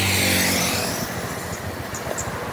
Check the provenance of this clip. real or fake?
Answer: real